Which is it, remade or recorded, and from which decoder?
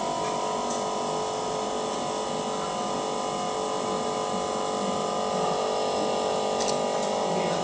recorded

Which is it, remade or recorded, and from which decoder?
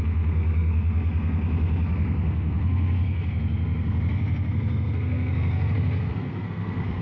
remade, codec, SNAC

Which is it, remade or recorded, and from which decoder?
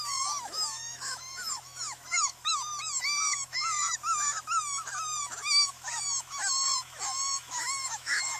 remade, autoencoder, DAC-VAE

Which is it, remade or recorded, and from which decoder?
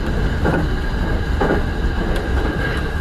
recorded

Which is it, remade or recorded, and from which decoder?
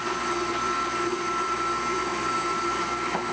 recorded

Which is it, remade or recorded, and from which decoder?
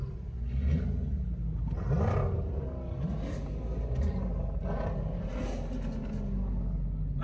recorded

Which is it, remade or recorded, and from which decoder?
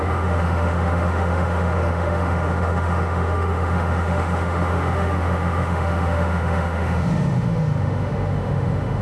remade, autoencoder, DAC-VAE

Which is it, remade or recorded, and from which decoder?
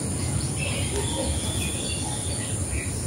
recorded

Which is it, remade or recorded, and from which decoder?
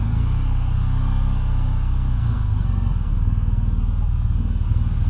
remade, codec, SNAC